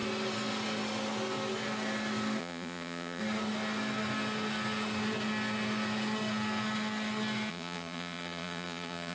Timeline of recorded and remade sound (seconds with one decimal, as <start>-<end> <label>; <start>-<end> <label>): 0.0-2.4 recorded; 2.4-3.2 remade; 3.2-7.5 recorded; 7.5-9.1 remade